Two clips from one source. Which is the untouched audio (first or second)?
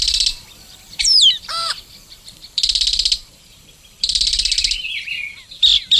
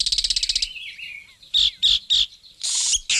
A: second